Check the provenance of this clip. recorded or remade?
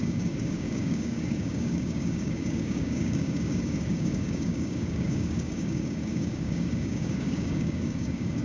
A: remade